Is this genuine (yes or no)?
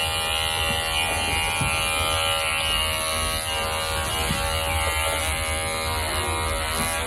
yes